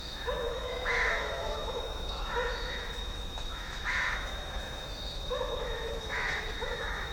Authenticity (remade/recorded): remade